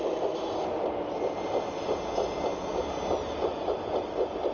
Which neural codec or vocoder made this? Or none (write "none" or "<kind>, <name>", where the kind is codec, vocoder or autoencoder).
none